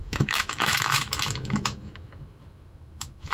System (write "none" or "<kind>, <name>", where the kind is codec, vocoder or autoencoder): autoencoder, DAC-VAE